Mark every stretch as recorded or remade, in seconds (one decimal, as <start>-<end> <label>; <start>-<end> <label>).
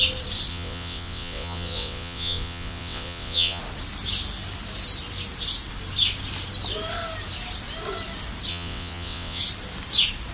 0.0-0.5 recorded; 0.5-3.6 remade; 3.6-8.5 recorded; 8.5-9.4 remade; 9.4-10.3 recorded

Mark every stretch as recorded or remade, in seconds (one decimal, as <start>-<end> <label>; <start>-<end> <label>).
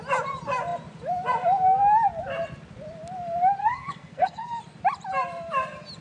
0.0-3.6 recorded; 3.6-4.6 remade; 4.6-6.0 recorded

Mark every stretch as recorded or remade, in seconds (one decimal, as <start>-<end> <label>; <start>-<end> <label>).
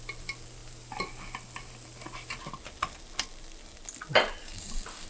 0.0-5.1 recorded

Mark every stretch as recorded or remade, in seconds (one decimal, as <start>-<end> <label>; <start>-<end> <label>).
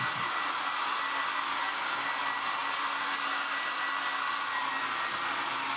0.0-5.8 recorded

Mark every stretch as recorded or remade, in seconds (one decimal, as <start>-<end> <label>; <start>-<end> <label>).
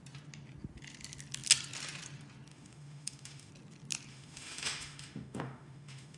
0.0-2.5 recorded; 2.5-3.5 remade; 3.5-4.1 recorded; 4.1-6.2 remade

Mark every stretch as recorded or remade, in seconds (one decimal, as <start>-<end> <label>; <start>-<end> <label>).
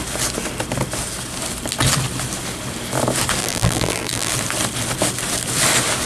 0.0-3.4 recorded; 3.4-4.3 remade; 4.3-6.1 recorded